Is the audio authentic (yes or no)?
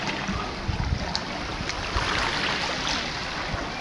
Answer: yes